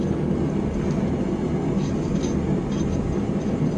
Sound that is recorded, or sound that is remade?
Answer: recorded